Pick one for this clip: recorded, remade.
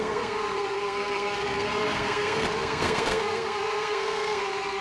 remade